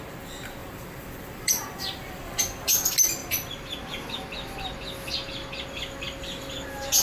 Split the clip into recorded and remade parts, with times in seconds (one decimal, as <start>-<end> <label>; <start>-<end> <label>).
0.0-0.6 recorded; 0.6-2.4 remade; 2.4-3.2 recorded; 3.2-4.1 remade; 4.1-7.0 recorded